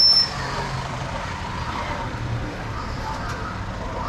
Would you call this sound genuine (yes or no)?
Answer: no